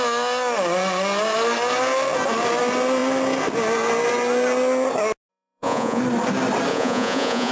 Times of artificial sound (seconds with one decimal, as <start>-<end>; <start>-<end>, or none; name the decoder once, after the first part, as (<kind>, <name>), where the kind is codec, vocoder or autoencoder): 5.3-6.0 (vocoder, Vocos); 6.7-7.5